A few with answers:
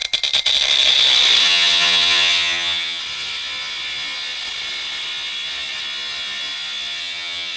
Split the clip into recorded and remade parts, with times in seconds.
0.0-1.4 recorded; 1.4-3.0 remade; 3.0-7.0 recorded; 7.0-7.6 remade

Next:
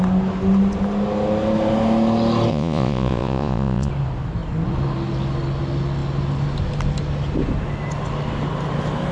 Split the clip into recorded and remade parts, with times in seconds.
0.0-2.5 recorded; 2.5-3.9 remade; 3.9-9.1 recorded

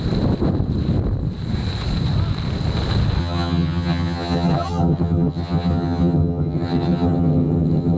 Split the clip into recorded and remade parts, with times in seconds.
0.0-3.2 recorded; 3.2-8.0 remade

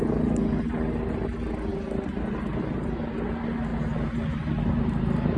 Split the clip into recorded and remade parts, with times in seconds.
0.0-5.4 recorded

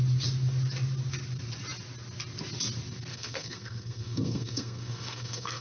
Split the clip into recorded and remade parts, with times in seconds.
0.0-3.1 recorded; 3.1-5.6 remade